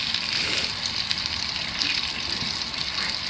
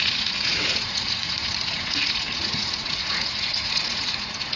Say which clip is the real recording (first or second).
first